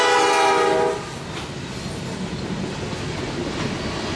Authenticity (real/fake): real